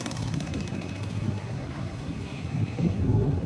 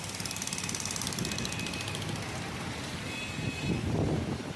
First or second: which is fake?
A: first